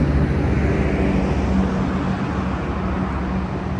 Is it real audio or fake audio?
real